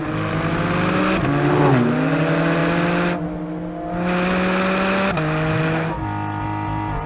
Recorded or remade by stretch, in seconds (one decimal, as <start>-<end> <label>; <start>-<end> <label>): 0.0-7.1 recorded